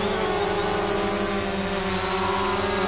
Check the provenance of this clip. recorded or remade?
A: recorded